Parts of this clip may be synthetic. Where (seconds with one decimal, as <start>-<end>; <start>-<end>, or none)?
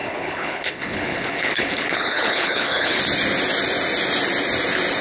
0.0-3.0